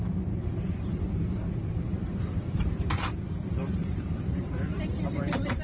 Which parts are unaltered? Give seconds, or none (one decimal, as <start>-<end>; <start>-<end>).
0.0-0.5; 1.0-2.0